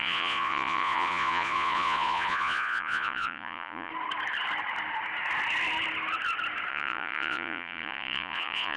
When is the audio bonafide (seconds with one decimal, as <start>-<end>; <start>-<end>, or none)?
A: 3.9-6.7